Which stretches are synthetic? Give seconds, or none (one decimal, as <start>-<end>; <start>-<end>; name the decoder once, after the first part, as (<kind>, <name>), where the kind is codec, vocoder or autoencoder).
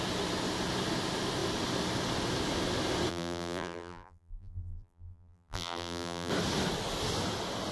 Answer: 3.1-6.3 (vocoder, BigVGAN v2)